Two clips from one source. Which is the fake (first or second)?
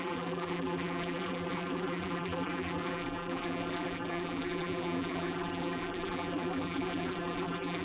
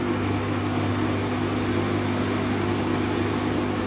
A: first